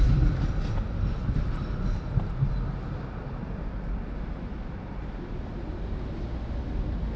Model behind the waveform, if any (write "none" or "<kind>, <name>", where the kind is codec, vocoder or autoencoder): none